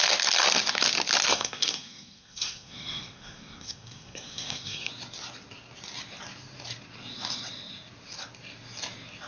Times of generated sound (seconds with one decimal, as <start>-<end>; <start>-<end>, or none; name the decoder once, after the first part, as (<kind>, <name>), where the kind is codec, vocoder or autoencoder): 1.3-4.9 (codec, SNAC)